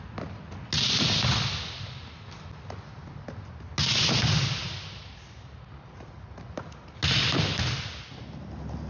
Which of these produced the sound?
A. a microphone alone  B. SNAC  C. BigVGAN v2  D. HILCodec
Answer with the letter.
A